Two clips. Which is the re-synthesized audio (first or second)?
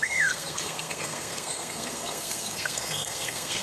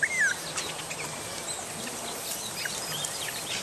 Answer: first